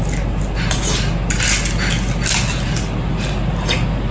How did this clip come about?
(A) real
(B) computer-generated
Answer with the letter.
A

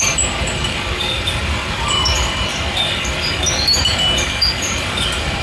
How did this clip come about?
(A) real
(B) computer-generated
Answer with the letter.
B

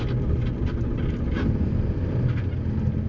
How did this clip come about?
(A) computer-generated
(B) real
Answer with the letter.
B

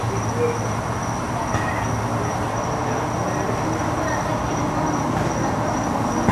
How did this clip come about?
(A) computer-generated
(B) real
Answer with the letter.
B